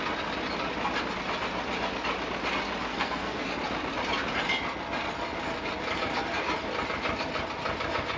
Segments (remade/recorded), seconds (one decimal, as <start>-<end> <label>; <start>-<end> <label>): 0.0-2.9 recorded; 2.9-3.5 remade; 3.5-8.2 recorded